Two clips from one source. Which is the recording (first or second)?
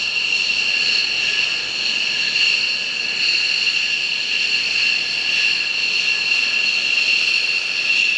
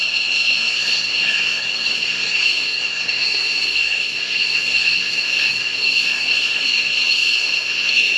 first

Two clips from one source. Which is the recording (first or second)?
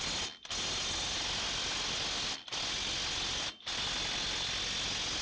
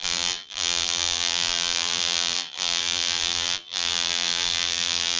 first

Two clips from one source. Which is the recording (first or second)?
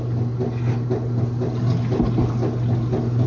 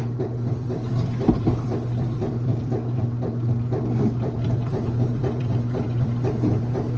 first